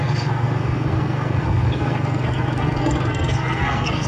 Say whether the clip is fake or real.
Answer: fake